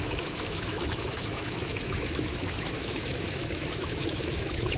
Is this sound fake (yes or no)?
yes